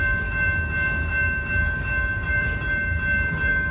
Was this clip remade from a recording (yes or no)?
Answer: yes